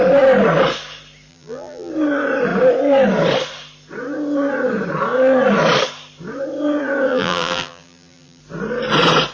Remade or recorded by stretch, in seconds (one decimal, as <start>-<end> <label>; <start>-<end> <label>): 0.0-1.3 recorded; 1.3-1.9 remade; 1.9-7.1 recorded; 7.1-8.4 remade; 8.4-9.3 recorded